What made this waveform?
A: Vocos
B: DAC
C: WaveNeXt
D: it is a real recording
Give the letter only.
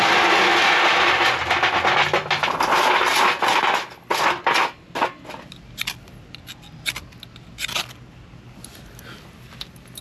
D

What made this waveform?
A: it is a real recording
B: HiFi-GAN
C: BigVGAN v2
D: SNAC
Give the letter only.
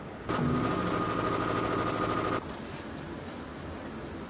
A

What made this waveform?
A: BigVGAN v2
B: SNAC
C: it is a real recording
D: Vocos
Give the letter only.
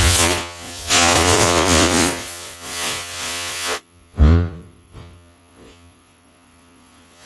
D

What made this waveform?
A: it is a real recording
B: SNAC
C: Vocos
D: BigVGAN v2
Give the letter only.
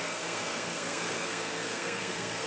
B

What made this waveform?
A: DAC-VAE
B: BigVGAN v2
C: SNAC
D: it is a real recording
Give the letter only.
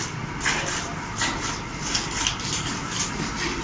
D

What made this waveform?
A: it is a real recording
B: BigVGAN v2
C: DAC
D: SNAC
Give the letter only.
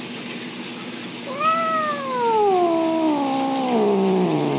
A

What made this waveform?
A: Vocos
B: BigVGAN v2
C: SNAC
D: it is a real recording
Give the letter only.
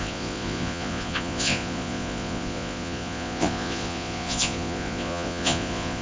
A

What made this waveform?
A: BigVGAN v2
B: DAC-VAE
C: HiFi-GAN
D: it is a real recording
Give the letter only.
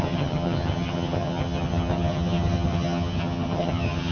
C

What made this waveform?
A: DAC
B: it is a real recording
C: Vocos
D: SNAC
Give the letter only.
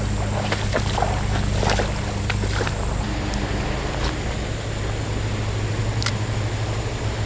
B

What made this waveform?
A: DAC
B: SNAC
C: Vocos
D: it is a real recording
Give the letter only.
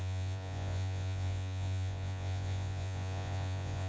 C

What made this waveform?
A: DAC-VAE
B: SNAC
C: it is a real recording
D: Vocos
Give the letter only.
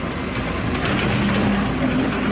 C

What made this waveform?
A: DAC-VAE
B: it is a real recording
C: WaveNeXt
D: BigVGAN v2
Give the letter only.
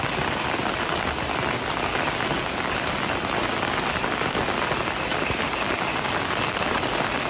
B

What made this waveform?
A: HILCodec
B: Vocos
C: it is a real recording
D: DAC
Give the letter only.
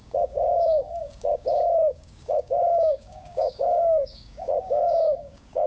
D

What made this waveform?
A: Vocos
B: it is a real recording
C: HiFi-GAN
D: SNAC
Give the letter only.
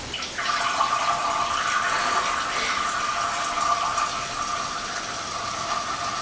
B